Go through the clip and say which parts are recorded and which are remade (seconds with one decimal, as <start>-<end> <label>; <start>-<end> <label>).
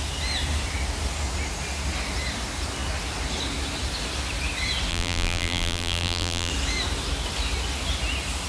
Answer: 0.0-4.9 recorded; 4.9-6.5 remade; 6.5-8.5 recorded